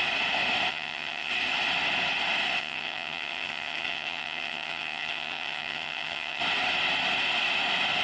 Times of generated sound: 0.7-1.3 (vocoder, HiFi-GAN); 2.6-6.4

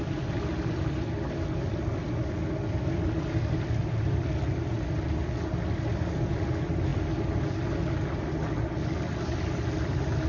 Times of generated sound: none

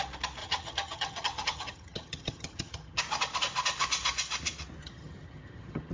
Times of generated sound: 0.4-3.0 (vocoder, HiFi-GAN); 4.8-5.9

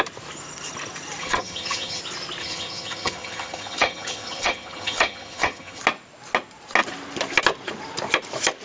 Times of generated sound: 1.2-2.0 (vocoder, HiFi-GAN); 2.4-5.8

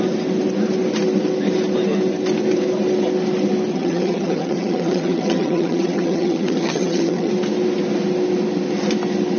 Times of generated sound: 3.7-7.3 (vocoder, HiFi-GAN)

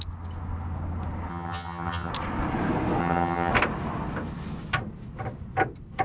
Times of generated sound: 1.3-2.1 (vocoder, HiFi-GAN); 3.0-3.5

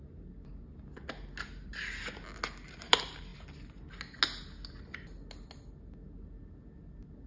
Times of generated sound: none

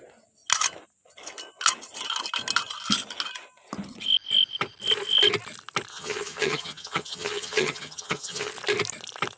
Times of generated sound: 5.9-8.5 (vocoder, HiFi-GAN)